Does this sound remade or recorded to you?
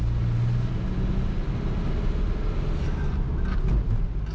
recorded